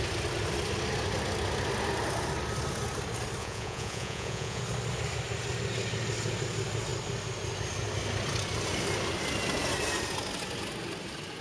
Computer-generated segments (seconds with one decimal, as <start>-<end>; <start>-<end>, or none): 3.4-4.6